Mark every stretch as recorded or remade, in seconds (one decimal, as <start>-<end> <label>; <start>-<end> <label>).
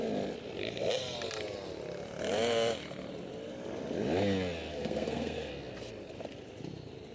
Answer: 0.0-4.7 recorded; 4.7-5.5 remade; 5.5-7.1 recorded